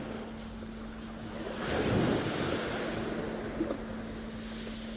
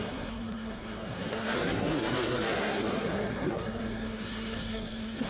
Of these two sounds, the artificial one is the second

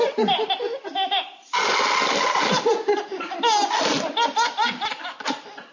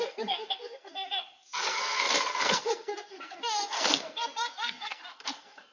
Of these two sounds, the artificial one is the second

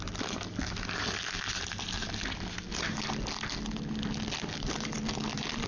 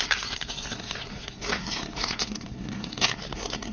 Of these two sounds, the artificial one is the second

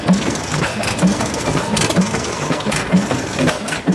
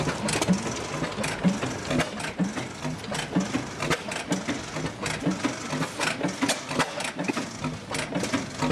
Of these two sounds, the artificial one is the first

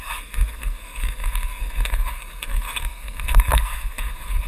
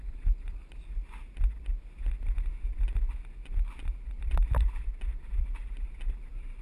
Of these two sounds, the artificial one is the first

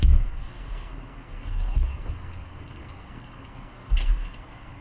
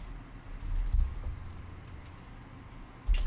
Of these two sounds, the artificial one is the first